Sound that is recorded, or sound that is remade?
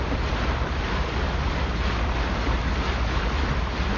recorded